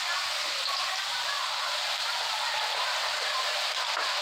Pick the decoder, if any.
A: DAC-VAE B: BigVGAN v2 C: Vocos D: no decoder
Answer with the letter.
D